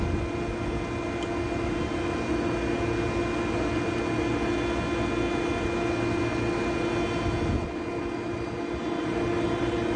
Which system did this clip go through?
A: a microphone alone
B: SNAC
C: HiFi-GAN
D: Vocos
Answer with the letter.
A